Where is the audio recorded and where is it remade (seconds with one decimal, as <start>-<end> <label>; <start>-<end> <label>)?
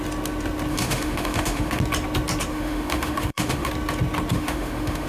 0.0-0.7 recorded; 0.7-1.8 remade; 1.8-2.5 recorded; 2.5-3.7 remade; 3.7-4.3 recorded; 4.3-5.1 remade